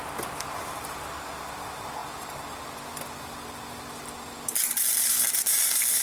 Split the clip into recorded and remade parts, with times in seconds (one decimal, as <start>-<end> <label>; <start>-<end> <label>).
0.0-6.0 recorded